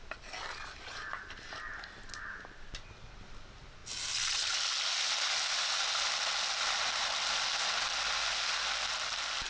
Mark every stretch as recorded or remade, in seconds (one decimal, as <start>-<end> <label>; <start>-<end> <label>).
0.0-9.5 recorded